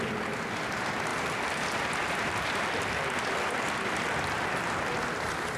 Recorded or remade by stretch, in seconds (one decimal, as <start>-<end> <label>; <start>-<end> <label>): 0.0-5.6 recorded